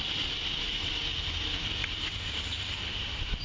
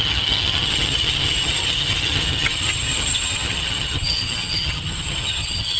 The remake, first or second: second